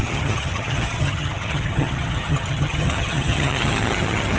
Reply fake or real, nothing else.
fake